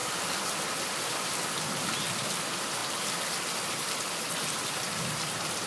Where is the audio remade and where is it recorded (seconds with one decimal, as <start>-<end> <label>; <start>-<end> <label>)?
0.0-5.7 recorded